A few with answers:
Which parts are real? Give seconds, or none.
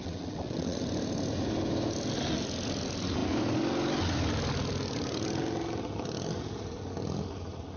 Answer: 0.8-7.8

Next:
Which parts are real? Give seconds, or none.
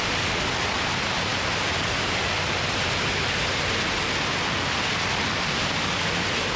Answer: 0.0-6.6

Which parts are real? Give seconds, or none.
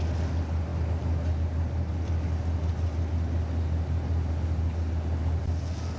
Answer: 0.0-6.0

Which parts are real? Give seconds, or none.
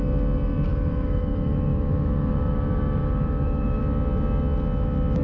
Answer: 0.0-0.7; 3.8-5.2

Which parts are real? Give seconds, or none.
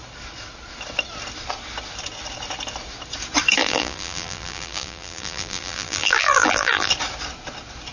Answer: 0.0-3.6; 6.9-7.9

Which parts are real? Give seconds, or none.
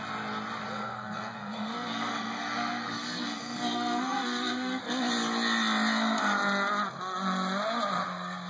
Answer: 0.0-0.7; 4.8-8.5